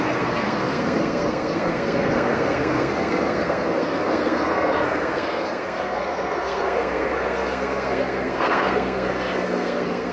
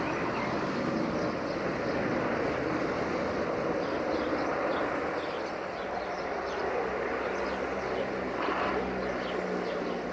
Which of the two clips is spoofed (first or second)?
first